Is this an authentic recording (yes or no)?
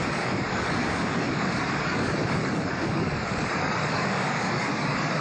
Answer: no